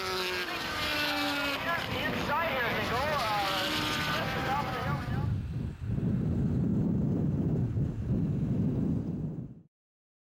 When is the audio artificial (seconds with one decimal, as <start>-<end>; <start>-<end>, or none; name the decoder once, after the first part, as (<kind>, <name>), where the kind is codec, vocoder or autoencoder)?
none